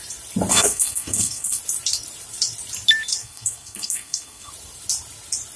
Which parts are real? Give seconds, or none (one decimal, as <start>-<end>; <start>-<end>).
0.0-0.5; 1.6-3.2; 4.5-5.6